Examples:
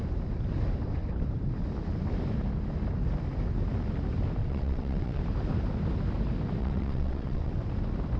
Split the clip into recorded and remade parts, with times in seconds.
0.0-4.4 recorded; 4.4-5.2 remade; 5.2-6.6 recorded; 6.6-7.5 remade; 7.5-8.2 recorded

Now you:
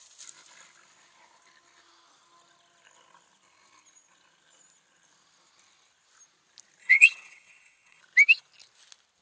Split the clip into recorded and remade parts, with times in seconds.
0.0-6.8 recorded; 6.8-8.0 remade; 8.0-9.2 recorded

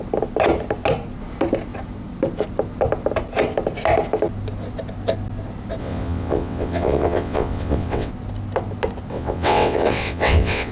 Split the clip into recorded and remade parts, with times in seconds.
0.0-5.8 recorded; 5.8-8.1 remade; 8.1-9.1 recorded; 9.1-10.7 remade

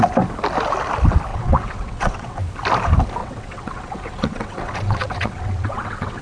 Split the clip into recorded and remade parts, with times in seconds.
0.0-1.3 recorded; 1.3-2.4 remade; 2.4-3.2 recorded; 3.2-6.2 remade

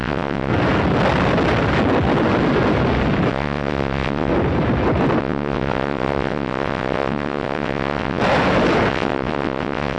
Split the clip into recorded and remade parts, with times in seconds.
0.0-0.5 remade; 0.5-3.3 recorded; 3.3-4.3 remade; 4.3-5.2 recorded; 5.2-8.2 remade; 8.2-8.9 recorded; 8.9-10.0 remade

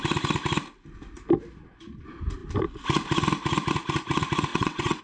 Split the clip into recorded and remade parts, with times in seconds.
0.0-4.5 recorded; 4.5-5.0 remade

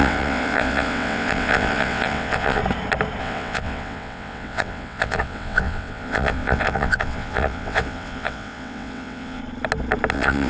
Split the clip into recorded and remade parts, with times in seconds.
0.0-2.6 remade; 2.6-3.2 recorded; 3.2-9.4 remade; 9.4-10.1 recorded; 10.1-10.5 remade